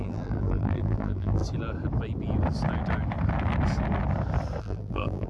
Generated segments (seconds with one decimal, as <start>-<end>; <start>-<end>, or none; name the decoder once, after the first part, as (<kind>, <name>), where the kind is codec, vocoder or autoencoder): 0.0-1.4 (vocoder, BigVGAN v2); 4.6-5.3